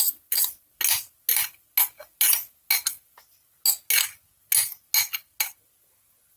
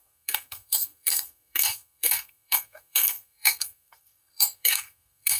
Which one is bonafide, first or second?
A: first